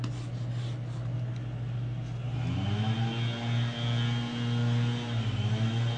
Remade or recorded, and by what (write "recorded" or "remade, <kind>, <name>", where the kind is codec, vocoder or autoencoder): recorded